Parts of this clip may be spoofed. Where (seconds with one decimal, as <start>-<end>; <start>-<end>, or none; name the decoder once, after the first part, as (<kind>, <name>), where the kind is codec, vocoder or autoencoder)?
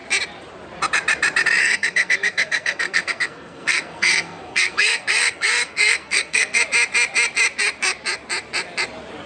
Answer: 1.6-6.6 (codec, SNAC)